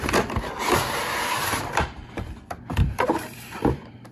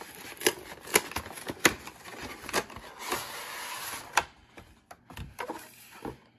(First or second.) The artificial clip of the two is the first